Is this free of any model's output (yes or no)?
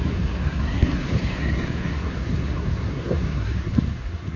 no